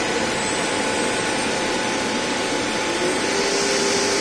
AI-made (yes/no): no